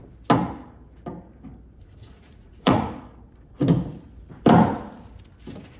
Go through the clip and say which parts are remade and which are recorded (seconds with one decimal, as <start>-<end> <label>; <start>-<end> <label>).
0.0-1.8 recorded; 1.8-3.0 remade; 3.0-5.8 recorded